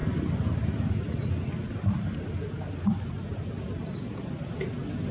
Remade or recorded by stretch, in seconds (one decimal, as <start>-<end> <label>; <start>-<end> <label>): 0.0-5.1 recorded